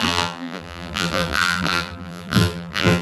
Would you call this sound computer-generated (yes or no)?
yes